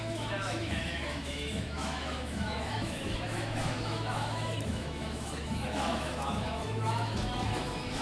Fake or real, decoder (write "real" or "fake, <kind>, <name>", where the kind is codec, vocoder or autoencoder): fake, autoencoder, DAC-VAE